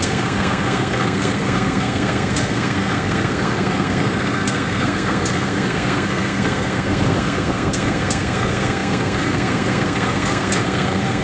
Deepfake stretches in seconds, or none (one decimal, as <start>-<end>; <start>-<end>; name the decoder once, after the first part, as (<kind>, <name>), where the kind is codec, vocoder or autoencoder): 0.0-11.2 (codec, SNAC)